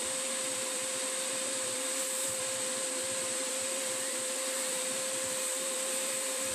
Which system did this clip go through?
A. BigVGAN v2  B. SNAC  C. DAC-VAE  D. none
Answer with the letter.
A